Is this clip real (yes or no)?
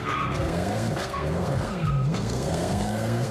no